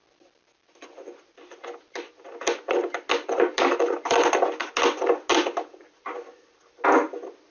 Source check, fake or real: real